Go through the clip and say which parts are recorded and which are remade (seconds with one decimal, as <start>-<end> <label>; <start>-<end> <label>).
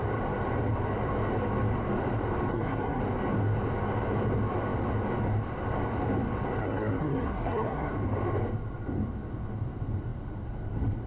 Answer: 0.0-2.5 recorded; 2.5-3.0 remade; 3.0-6.6 recorded; 6.6-7.9 remade; 7.9-11.1 recorded